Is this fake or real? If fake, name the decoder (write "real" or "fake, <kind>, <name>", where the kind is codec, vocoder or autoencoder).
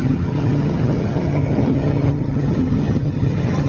fake, vocoder, HiFi-GAN